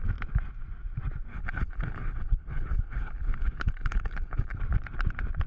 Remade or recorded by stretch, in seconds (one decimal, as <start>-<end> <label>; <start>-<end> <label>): 0.0-1.3 recorded; 1.3-4.6 remade; 4.6-5.5 recorded